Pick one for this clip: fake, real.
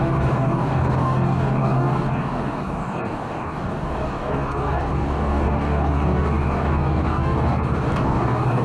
fake